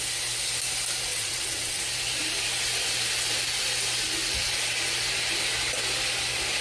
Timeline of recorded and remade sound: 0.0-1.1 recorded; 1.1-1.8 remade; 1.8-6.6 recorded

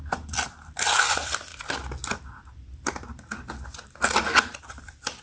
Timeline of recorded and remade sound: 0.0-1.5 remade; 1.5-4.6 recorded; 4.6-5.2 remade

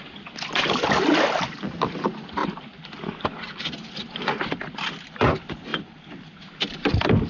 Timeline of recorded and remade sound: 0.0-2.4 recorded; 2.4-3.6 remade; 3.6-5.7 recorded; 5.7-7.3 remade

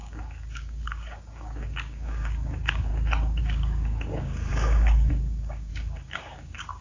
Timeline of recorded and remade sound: 0.0-2.9 remade; 2.9-3.4 recorded; 3.4-6.8 remade